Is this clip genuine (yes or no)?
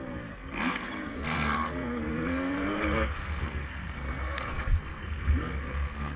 no